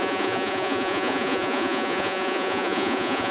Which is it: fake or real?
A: fake